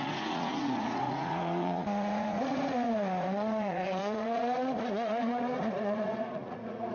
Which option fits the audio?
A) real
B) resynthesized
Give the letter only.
B